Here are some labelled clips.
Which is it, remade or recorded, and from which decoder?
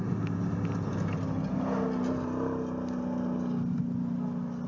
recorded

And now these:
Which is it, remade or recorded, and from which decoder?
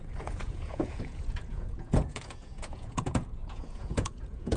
remade, vocoder, Vocos